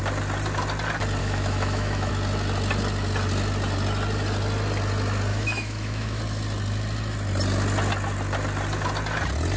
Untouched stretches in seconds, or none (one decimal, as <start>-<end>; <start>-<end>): 0.0-1.2; 2.1-5.3; 6.2-9.6